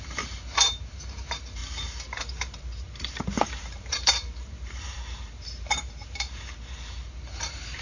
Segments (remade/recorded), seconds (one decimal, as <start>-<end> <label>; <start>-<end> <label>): 0.0-1.6 remade; 1.6-2.2 recorded; 2.2-7.8 remade